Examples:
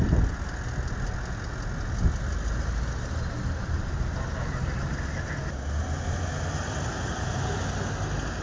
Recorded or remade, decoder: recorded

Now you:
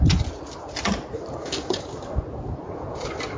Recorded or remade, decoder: recorded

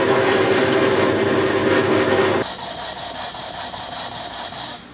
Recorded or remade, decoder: recorded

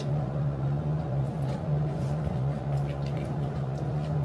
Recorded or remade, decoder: remade, vocoder, Vocos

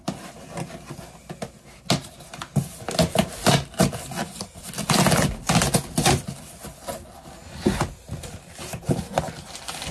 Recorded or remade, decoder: recorded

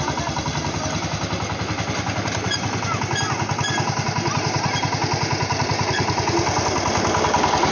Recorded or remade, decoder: recorded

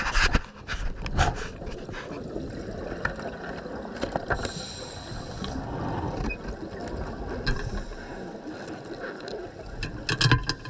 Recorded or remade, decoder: recorded